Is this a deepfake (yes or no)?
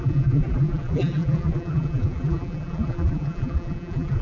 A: yes